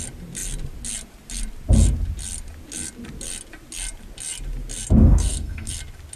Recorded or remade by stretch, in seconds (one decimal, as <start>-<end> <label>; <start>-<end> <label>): 0.0-5.0 recorded; 5.0-5.7 remade; 5.7-6.2 recorded